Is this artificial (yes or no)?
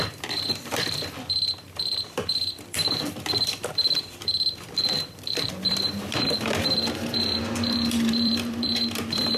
yes